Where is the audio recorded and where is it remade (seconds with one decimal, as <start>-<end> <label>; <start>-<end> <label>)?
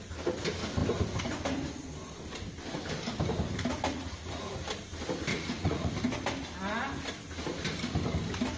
0.0-3.9 recorded; 3.9-4.5 remade; 4.5-5.3 recorded; 5.3-5.9 remade; 5.9-8.6 recorded